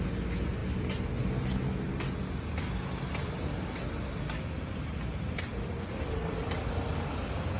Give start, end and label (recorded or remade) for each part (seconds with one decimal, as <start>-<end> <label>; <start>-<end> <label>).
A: 0.0-5.5 recorded; 5.5-6.7 remade; 6.7-7.6 recorded